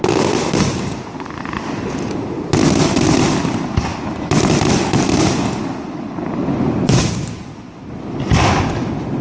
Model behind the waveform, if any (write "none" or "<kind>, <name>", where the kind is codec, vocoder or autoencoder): none